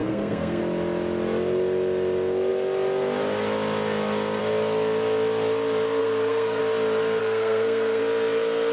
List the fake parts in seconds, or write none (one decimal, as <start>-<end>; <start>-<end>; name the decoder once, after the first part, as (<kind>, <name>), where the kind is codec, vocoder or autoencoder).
0.0-0.6 (codec, SNAC); 6.0-6.6; 7.2-8.0